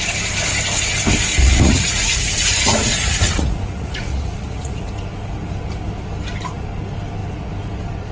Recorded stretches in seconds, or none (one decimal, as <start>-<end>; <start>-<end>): 0.0-1.4; 4.9-8.1